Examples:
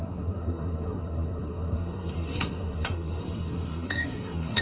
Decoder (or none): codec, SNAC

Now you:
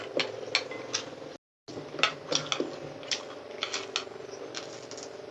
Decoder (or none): none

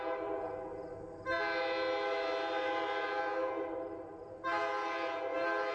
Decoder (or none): none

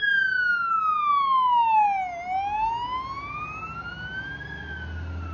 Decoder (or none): none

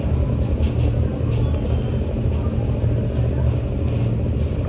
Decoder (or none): none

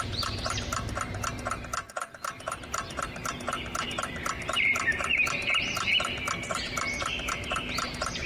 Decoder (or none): none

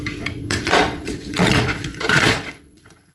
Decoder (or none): vocoder, Vocos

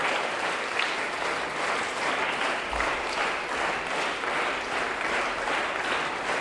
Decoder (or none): none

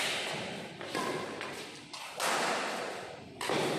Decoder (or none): none